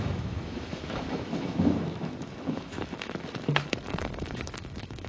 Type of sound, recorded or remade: remade